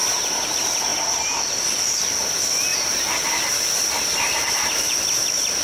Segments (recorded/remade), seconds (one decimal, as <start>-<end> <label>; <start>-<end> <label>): 0.0-0.5 remade; 0.5-2.7 recorded; 2.7-3.3 remade; 3.3-4.1 recorded; 4.1-4.8 remade; 4.8-5.6 recorded